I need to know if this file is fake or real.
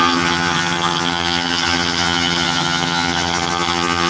fake